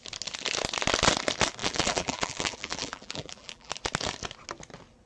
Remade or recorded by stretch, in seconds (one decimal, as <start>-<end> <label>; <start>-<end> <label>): 0.0-1.6 recorded; 1.6-3.7 remade; 3.7-5.1 recorded